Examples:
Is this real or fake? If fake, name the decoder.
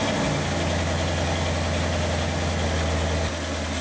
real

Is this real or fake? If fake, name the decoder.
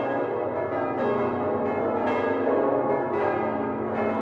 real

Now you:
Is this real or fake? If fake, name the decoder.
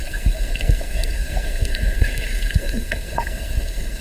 fake, codec, SNAC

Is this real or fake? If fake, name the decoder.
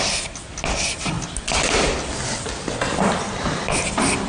real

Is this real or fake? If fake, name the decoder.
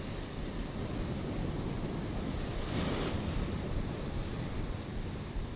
real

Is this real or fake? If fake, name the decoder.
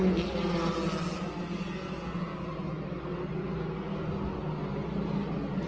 real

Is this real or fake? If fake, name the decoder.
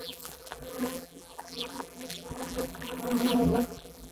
fake, vocoder, BigVGAN v2